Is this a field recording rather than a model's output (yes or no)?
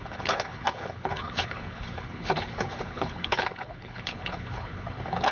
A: no